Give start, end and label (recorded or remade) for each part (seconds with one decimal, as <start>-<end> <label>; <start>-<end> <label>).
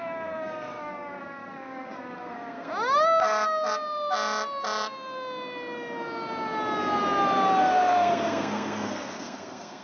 0.0-2.7 remade; 2.7-7.6 recorded; 7.6-9.8 remade